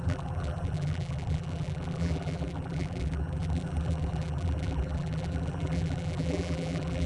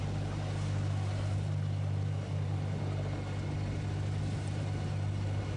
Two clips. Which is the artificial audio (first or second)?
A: first